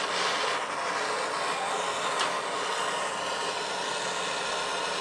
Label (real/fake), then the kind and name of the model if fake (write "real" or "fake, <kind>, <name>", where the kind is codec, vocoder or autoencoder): real